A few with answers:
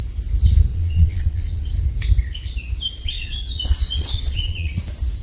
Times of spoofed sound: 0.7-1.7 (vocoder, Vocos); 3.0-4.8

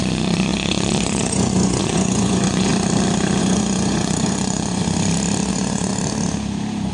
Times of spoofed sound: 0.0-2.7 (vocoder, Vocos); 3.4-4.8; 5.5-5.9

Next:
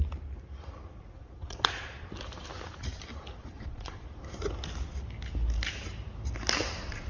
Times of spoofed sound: 1.2-2.0 (vocoder, Vocos); 3.4-4.2